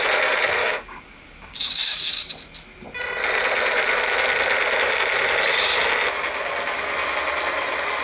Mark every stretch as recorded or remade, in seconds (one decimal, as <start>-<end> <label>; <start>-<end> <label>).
0.0-0.6 recorded; 0.6-2.1 remade; 2.1-8.0 recorded

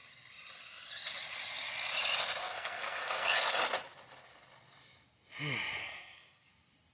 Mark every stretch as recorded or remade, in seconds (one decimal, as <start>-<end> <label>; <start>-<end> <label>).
0.0-2.4 recorded; 2.4-3.5 remade; 3.5-5.8 recorded; 5.8-6.5 remade; 6.5-6.9 recorded

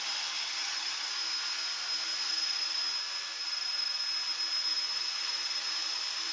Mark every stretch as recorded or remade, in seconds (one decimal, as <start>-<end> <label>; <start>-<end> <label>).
0.0-0.4 recorded; 0.4-1.1 remade; 1.1-6.3 recorded

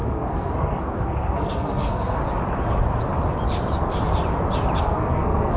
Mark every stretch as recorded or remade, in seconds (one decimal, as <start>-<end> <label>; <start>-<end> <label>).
0.0-2.2 remade; 2.2-4.8 recorded; 4.8-5.6 remade

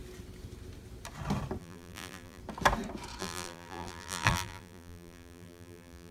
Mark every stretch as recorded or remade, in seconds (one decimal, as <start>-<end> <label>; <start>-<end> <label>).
0.0-1.6 recorded; 1.6-2.4 remade; 2.4-3.2 recorded; 3.2-6.1 remade

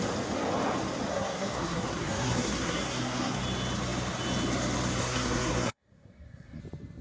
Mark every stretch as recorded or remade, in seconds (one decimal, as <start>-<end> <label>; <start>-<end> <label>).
0.0-1.1 recorded; 1.1-3.4 remade; 3.4-5.0 recorded; 5.0-6.6 remade; 6.6-7.0 recorded